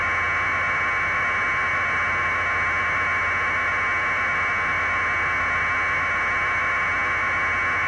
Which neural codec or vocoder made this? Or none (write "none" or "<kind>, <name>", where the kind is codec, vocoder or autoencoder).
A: none